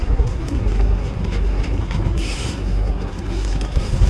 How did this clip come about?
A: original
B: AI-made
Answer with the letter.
B